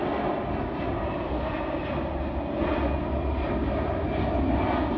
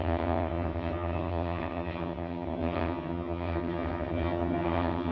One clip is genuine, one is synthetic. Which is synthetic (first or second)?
second